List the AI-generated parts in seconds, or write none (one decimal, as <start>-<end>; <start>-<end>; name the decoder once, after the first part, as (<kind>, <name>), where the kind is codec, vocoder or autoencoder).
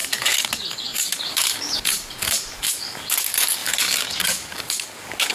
0.0-5.3 (codec, DAC)